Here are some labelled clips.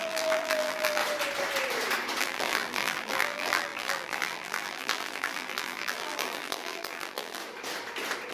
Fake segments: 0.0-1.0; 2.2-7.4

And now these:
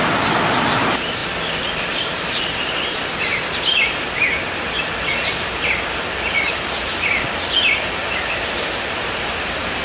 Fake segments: 0.0-3.3; 5.1-9.8

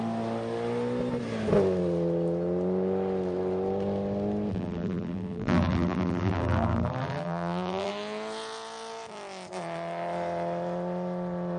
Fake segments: 4.5-7.9

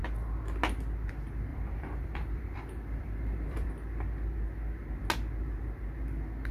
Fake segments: 1.5-3.7

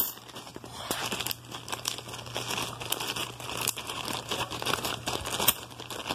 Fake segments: 0.5-1.0; 3.2-5.2

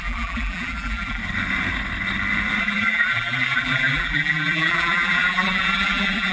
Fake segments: 0.0-1.2; 2.6-6.3